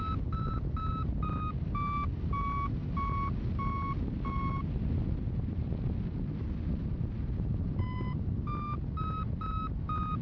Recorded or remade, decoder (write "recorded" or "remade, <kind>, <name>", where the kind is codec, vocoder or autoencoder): recorded